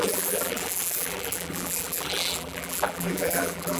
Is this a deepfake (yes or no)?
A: yes